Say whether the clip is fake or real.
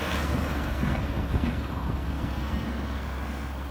fake